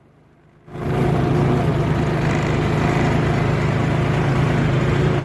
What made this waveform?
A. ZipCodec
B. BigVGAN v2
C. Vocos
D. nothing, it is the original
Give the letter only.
D